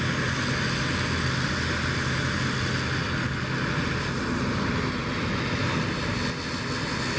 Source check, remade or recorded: recorded